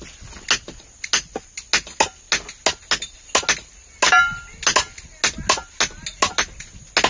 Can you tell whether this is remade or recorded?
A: recorded